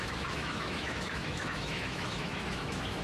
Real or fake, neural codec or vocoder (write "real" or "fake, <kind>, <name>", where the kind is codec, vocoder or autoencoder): fake, autoencoder, DAC-VAE